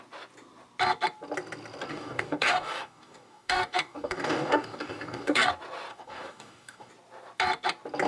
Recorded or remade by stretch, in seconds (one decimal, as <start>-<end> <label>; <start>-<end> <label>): 0.0-1.9 recorded; 1.9-5.5 remade; 5.5-5.9 recorded; 5.9-6.9 remade; 6.9-8.1 recorded